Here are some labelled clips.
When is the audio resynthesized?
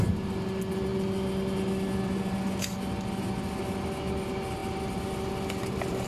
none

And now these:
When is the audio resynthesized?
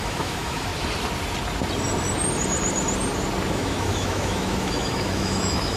0.0-0.7 (autoencoder, DAC-VAE); 3.5-5.8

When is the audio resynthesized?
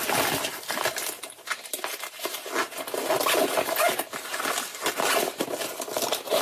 none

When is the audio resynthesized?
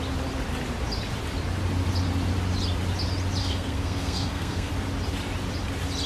3.4-4.7 (codec, SNAC)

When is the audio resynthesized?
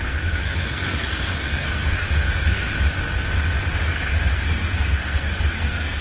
0.0-2.7 (codec, SNAC); 3.8-6.0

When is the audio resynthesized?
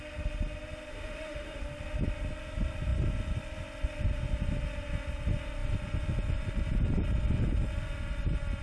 0.9-1.6 (autoencoder, DAC-VAE)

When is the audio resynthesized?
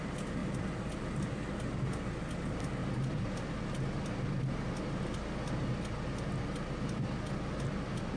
none